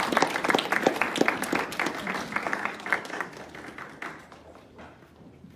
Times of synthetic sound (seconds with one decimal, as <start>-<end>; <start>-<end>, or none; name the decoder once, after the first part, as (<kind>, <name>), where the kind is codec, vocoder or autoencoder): 2.4-3.4 (codec, DAC)